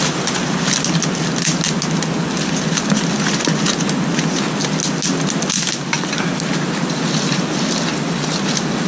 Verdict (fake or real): real